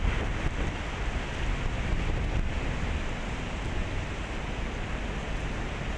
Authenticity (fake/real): real